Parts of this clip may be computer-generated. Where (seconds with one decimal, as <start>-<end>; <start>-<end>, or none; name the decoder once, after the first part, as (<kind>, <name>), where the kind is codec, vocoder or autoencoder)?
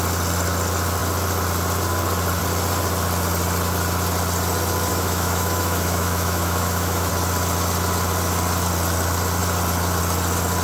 4.9-7.1 (autoencoder, DAC-VAE)